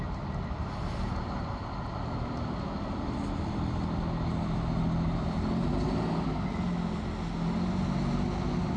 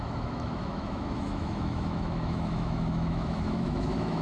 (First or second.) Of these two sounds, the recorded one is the first